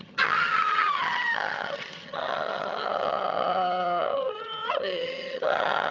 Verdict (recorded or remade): remade